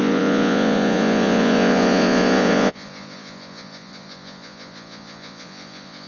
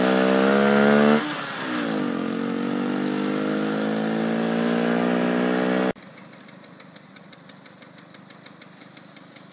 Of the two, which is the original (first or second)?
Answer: second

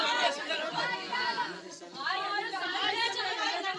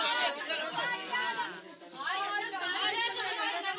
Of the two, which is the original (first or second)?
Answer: second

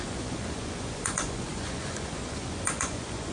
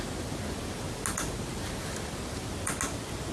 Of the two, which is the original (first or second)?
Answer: second